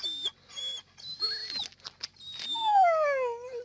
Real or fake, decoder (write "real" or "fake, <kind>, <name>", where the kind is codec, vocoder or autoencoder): real